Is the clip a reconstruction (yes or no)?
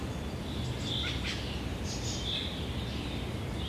no